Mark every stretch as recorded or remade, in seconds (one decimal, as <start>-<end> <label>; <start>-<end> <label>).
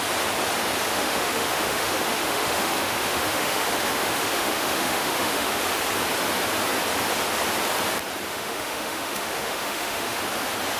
0.0-0.9 recorded; 0.9-5.6 remade; 5.6-8.3 recorded; 8.3-10.2 remade; 10.2-10.8 recorded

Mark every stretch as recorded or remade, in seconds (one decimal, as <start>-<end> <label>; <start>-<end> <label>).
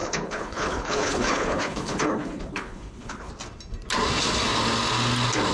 0.0-3.3 remade; 3.3-5.5 recorded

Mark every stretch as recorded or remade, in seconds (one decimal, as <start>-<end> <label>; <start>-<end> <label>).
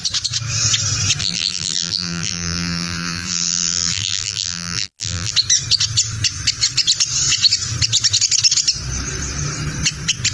0.0-1.2 recorded; 1.2-5.3 remade; 5.3-10.3 recorded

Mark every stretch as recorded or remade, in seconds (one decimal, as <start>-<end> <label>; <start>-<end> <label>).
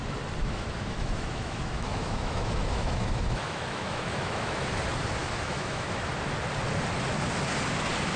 0.0-0.4 recorded; 0.4-4.7 remade; 4.7-5.2 recorded; 5.2-6.1 remade; 6.1-8.2 recorded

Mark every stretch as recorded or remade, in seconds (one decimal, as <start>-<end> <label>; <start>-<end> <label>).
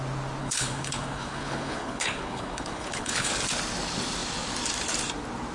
0.0-0.4 recorded; 0.4-3.3 remade; 3.3-5.5 recorded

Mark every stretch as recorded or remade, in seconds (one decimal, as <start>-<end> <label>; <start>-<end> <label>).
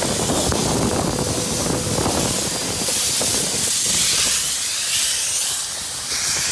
0.0-6.5 recorded